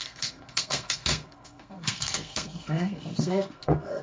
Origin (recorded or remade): remade